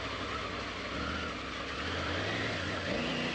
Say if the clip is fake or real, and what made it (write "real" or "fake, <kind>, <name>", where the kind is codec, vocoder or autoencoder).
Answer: real